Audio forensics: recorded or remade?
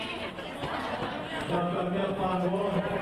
recorded